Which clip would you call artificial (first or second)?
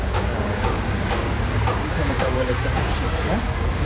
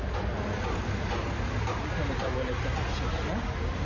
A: first